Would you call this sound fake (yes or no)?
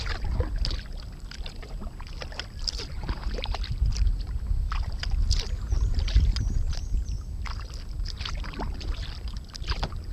no